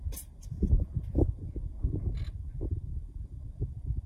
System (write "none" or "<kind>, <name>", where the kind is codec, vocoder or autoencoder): none